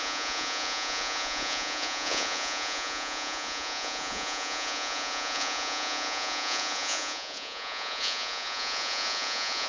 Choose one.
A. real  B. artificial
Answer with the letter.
B